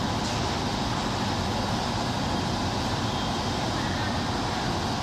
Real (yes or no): yes